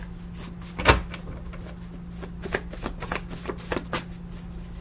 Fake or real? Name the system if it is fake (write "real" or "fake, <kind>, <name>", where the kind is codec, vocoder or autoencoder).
real